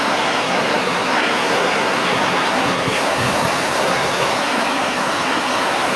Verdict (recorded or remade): remade